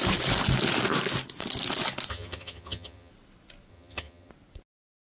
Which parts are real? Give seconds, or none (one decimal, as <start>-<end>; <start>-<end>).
0.0-2.1; 3.1-3.7; 4.3-5.0

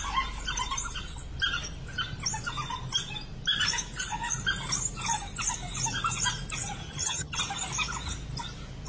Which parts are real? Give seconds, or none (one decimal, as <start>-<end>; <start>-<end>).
0.0-6.8; 7.4-8.9